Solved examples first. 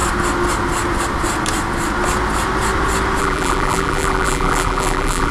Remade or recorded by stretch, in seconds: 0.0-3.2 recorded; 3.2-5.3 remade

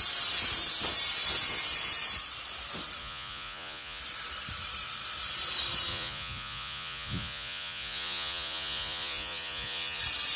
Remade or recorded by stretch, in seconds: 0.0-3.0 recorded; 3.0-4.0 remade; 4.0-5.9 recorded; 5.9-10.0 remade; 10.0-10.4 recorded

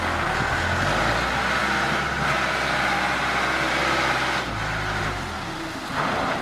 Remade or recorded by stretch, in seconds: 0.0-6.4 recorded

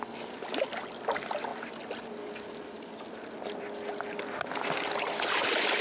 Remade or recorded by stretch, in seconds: 0.0-5.8 recorded